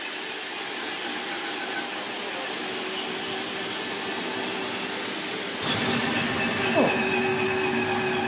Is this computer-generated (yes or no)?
no